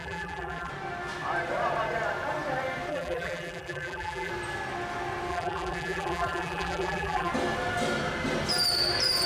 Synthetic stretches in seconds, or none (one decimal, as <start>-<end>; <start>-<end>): 0.0-0.7; 2.9-4.3; 5.3-7.3